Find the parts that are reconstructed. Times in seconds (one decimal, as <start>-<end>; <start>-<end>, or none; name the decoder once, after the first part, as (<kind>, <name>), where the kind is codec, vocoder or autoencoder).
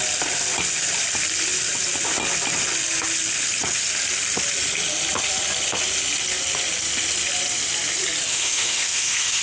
8.3-9.4 (autoencoder, DAC-VAE)